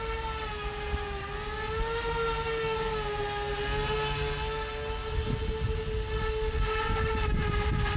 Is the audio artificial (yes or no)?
no